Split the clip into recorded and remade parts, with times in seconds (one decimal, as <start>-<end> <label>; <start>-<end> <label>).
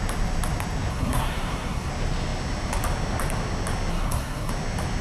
0.0-0.9 recorded; 0.9-1.9 remade; 1.9-3.9 recorded; 3.9-4.5 remade; 4.5-5.0 recorded